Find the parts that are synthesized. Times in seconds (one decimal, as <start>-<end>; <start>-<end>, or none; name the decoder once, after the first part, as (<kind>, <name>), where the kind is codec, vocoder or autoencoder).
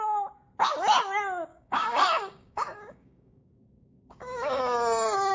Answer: 1.5-4.6 (codec, DAC)